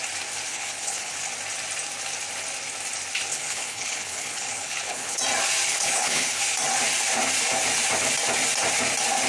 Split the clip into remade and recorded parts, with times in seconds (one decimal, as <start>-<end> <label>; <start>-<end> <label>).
0.0-0.5 recorded; 0.5-1.1 remade; 1.1-3.3 recorded; 3.3-5.2 remade; 5.2-5.7 recorded; 5.7-6.4 remade; 6.4-9.3 recorded